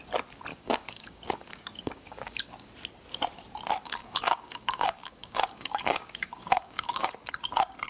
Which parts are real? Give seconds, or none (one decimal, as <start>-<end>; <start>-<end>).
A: 0.0-0.5; 2.7-4.0; 7.3-7.9